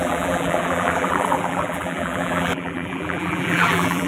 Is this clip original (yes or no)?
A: no